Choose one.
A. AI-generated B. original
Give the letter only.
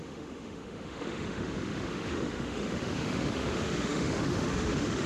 A